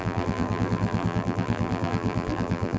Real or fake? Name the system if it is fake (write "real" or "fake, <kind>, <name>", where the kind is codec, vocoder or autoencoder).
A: fake, vocoder, BigVGAN v2